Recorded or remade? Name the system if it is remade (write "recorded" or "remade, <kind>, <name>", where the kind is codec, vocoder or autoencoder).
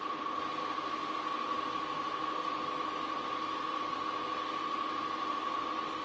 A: recorded